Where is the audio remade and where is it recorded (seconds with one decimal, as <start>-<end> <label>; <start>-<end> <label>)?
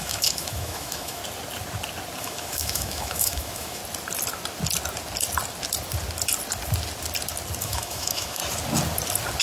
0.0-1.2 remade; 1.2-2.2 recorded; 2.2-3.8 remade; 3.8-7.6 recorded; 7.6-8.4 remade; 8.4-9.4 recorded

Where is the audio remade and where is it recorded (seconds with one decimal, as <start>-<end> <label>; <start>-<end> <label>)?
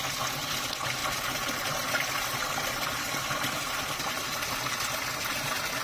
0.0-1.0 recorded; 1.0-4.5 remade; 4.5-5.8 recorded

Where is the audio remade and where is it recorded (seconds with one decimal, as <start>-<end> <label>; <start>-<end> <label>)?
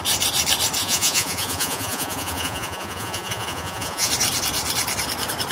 0.0-0.8 recorded; 0.8-4.1 remade; 4.1-5.5 recorded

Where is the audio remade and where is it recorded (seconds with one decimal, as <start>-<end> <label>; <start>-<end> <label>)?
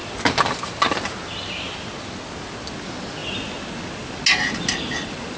0.0-5.4 recorded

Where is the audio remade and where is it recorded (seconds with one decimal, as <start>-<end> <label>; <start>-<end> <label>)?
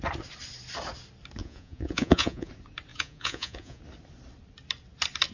0.0-1.4 recorded; 1.4-2.5 remade; 2.5-2.9 recorded; 2.9-3.8 remade; 3.8-5.3 recorded